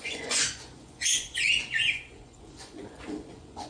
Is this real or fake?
fake